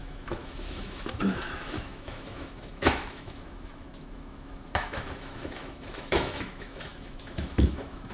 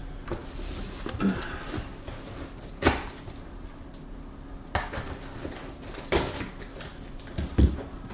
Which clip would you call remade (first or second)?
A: first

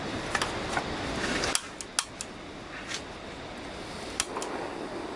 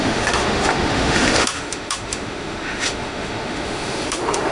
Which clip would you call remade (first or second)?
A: second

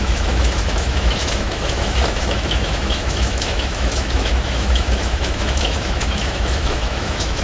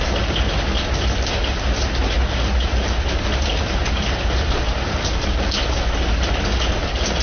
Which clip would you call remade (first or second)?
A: first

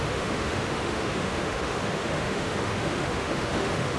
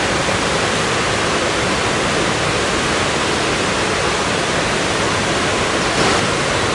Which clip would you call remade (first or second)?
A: first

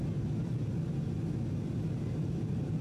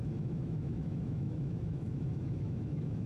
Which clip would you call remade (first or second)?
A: second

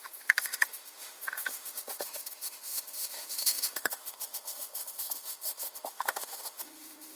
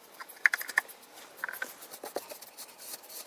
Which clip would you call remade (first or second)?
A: first